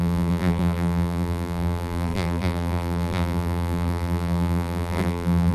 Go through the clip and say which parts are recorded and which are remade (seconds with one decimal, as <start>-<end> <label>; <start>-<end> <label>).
0.0-5.5 remade